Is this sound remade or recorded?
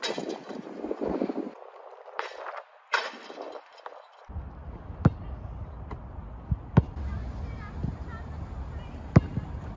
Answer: recorded